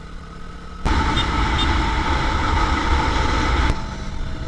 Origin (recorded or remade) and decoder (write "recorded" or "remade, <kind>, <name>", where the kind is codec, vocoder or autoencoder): recorded